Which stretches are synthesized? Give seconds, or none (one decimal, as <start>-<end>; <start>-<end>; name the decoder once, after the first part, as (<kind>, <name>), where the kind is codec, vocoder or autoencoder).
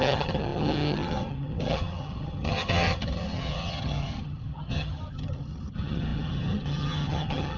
0.0-7.6 (vocoder, HiFi-GAN)